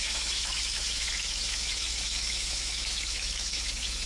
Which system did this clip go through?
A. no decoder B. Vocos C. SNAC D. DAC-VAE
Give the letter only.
D